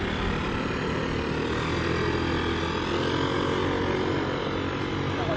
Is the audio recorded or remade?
recorded